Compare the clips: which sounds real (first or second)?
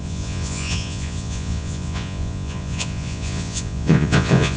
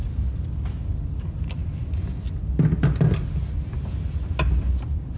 second